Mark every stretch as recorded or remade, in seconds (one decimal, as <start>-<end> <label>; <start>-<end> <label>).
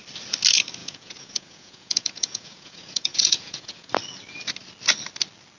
0.0-0.8 recorded; 0.8-3.9 remade; 3.9-5.6 recorded